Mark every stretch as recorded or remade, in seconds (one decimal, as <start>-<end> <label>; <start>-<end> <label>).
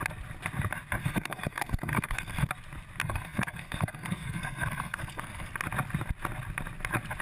0.0-1.0 recorded; 1.0-2.5 remade; 2.5-3.0 recorded; 3.0-5.5 remade; 5.5-7.2 recorded